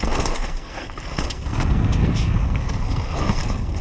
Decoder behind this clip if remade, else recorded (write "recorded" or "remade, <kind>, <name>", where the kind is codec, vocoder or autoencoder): remade, codec, SNAC